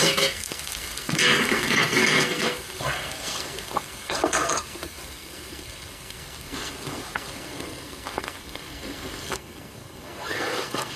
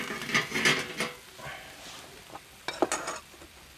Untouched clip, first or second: second